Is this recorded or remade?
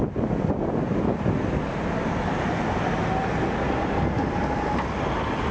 recorded